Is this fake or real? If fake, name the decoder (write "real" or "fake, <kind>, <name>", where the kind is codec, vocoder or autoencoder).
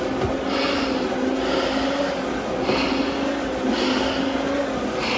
real